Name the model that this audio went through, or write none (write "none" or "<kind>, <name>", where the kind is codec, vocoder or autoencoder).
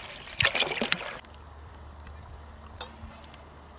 none